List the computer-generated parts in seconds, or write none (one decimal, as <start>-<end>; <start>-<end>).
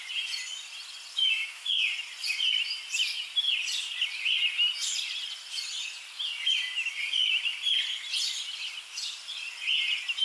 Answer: 1.1-1.8